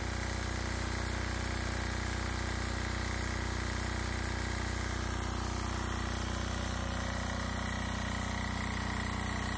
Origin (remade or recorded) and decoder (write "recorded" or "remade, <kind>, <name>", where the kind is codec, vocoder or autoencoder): recorded